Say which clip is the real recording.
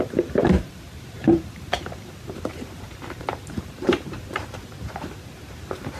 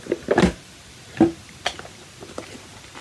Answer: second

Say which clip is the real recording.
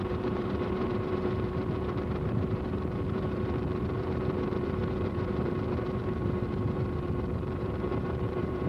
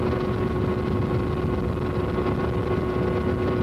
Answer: second